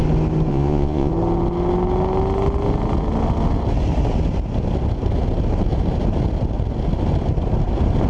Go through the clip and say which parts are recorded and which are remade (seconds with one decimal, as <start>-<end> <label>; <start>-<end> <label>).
0.0-0.5 recorded; 0.5-1.1 remade; 1.1-8.1 recorded